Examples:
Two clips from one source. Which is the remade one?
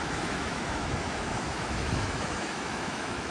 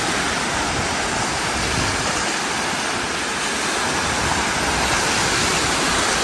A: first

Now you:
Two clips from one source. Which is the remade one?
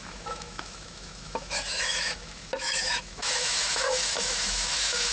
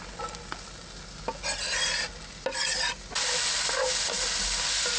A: first